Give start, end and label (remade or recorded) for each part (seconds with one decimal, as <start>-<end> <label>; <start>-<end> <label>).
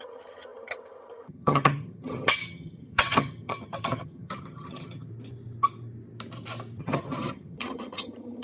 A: 0.0-5.1 remade; 5.1-6.8 recorded; 6.8-8.4 remade